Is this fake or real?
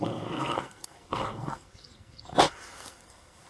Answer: fake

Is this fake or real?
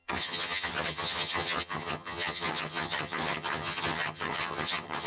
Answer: fake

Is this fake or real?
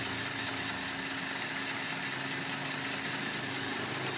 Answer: real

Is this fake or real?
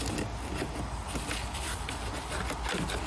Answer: real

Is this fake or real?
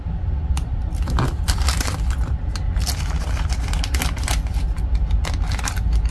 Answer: fake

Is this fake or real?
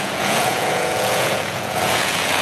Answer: fake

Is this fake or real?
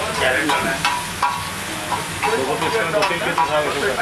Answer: real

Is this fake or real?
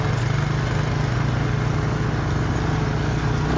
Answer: real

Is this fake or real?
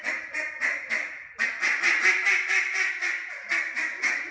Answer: real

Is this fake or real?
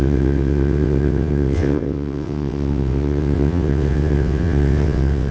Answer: fake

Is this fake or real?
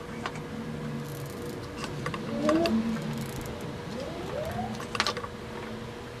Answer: real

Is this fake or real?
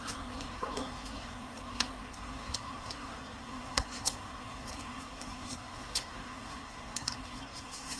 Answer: fake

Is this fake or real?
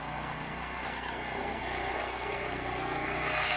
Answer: fake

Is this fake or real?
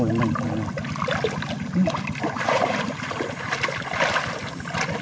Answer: real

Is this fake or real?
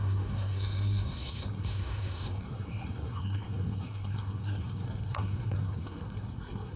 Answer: fake